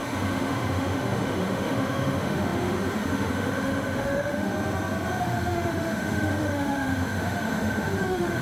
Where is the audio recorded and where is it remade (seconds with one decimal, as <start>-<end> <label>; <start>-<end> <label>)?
0.0-4.5 remade; 4.5-5.2 recorded; 5.2-8.4 remade